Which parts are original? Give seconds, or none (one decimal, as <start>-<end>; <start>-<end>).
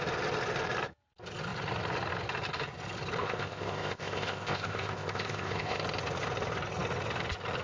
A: 0.0-3.2; 5.8-7.6